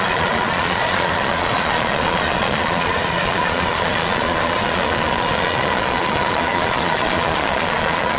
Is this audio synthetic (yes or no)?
yes